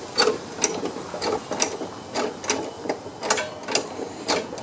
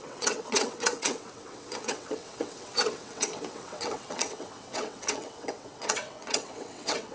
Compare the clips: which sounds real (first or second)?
first